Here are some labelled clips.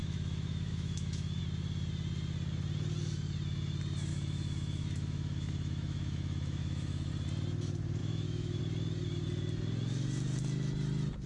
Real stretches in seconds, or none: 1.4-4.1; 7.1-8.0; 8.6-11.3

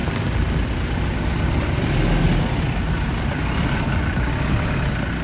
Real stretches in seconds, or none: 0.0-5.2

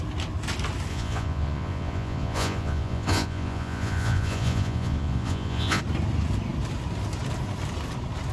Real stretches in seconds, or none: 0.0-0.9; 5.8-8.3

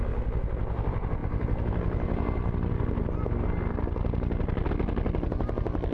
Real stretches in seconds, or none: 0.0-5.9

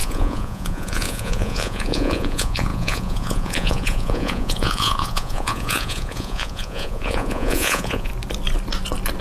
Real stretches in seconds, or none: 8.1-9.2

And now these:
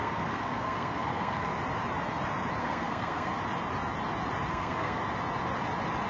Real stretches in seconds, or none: 1.5-2.6; 3.3-4.5; 5.0-6.1

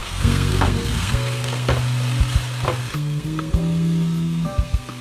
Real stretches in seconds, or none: 1.7-2.8